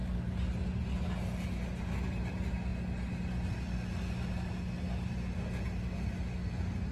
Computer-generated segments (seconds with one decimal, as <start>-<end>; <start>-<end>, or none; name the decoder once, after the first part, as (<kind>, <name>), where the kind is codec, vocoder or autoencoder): none